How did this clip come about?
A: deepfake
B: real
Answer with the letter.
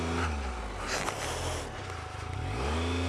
B